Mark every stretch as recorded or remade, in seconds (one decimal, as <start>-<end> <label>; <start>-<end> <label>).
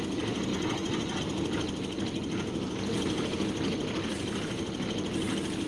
0.0-0.5 recorded; 0.5-1.2 remade; 1.2-5.7 recorded